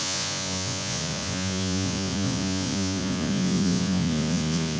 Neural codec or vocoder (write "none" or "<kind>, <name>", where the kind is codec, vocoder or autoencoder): vocoder, Vocos